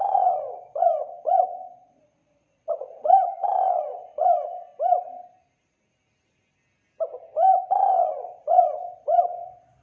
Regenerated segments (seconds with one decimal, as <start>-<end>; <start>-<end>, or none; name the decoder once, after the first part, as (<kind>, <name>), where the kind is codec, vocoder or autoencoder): 0.0-4.7 (vocoder, Vocos); 7.7-9.8